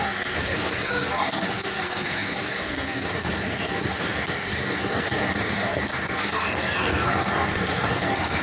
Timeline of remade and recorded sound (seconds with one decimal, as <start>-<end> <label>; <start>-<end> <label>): 0.0-8.4 remade